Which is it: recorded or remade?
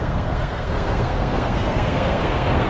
remade